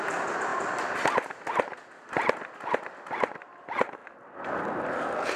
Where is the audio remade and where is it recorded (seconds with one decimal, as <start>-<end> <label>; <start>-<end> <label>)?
0.0-5.4 recorded